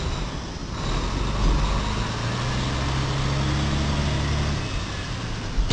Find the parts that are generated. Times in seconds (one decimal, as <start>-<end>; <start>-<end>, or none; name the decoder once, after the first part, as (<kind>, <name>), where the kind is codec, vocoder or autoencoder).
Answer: none